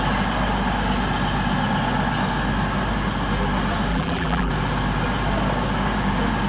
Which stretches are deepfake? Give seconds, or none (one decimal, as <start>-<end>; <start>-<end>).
3.9-4.5